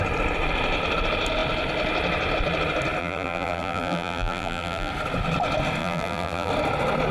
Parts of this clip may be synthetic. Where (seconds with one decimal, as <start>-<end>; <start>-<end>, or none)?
3.0-4.9; 5.8-6.5

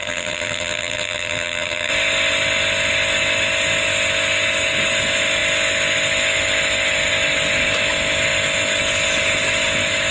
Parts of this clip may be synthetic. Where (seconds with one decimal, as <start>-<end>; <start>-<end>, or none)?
0.0-1.9

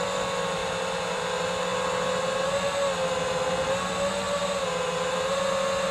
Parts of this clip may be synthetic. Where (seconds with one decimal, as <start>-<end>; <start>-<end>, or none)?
0.6-1.2

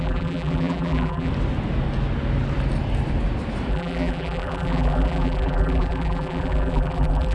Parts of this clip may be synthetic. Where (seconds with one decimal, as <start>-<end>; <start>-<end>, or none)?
0.0-1.3; 3.7-7.3

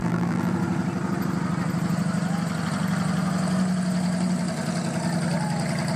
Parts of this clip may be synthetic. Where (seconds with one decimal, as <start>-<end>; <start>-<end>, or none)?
0.0-0.5

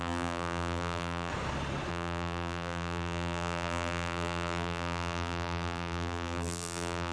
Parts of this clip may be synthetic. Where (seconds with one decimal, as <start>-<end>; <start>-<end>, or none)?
0.0-1.3; 1.9-7.1

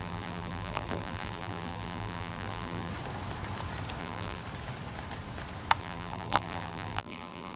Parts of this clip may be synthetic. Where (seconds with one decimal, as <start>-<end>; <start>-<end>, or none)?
0.0-2.9; 4.0-4.4; 5.8-7.6

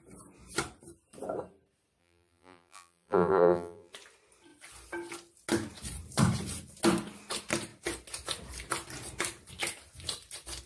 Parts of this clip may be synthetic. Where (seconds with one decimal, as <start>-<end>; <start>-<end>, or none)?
2.0-3.9